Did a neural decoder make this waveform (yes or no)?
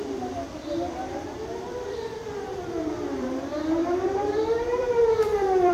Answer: yes